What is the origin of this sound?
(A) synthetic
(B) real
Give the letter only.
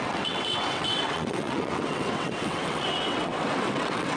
A